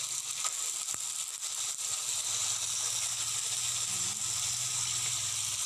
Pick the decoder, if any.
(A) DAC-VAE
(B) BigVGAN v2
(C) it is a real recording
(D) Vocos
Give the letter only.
C